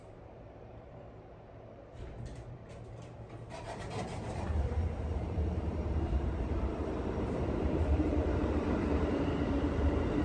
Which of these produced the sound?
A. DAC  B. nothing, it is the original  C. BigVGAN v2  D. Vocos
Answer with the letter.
C